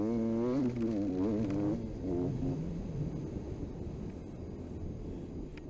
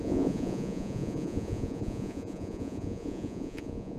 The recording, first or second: first